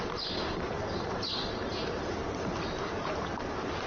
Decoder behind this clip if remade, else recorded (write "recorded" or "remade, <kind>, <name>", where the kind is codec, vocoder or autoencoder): recorded